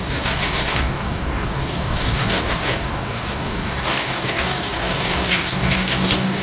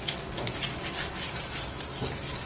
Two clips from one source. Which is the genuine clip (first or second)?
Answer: second